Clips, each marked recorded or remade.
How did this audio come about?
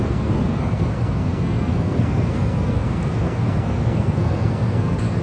remade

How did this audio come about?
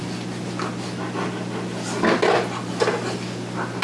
recorded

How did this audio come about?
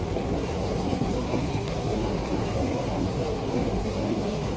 remade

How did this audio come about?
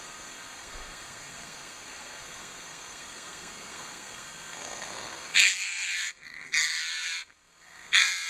remade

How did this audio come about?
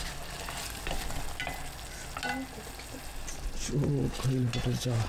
recorded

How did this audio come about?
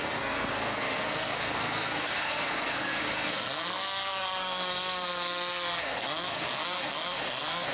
remade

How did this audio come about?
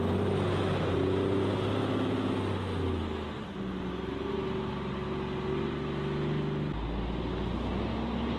recorded